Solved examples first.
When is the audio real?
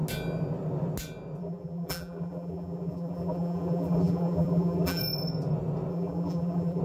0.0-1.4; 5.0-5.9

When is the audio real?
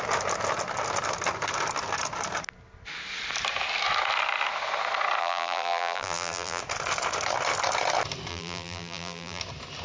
0.0-5.2; 6.6-8.3; 9.4-9.8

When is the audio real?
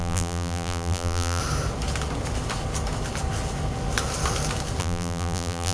1.4-4.8